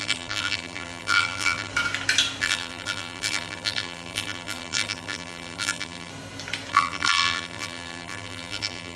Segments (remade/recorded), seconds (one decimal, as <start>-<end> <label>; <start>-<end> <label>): 0.0-1.7 remade; 1.7-2.4 recorded; 2.4-6.1 remade; 6.1-6.7 recorded; 6.7-9.0 remade